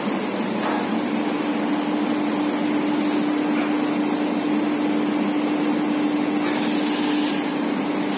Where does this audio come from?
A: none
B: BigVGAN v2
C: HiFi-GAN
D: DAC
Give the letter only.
A